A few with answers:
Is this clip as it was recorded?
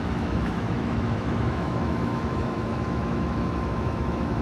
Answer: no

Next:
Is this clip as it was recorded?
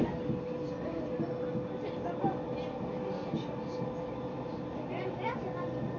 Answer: yes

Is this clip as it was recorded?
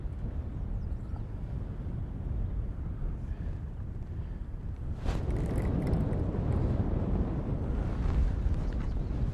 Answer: yes